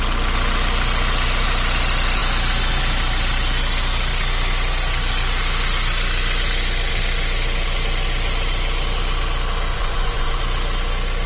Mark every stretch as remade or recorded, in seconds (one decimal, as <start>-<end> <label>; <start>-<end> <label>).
0.0-9.7 recorded; 9.7-10.4 remade; 10.4-11.3 recorded